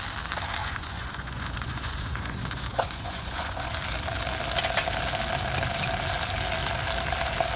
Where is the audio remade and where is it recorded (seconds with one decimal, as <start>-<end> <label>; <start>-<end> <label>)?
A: 0.0-0.6 recorded; 0.6-3.7 remade; 3.7-7.6 recorded